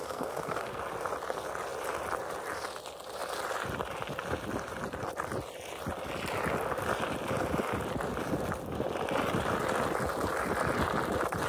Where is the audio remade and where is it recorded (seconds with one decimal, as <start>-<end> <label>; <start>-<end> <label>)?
0.0-0.8 remade; 0.8-11.5 recorded